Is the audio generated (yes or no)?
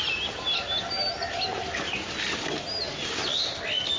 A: no